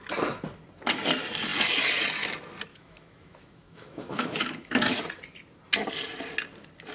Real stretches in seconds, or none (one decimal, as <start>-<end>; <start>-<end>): 0.0-2.7; 5.0-6.9